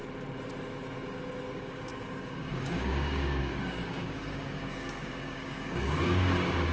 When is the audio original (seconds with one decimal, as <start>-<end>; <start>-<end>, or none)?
0.0-1.5